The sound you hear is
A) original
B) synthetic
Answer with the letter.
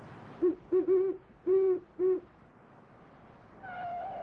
B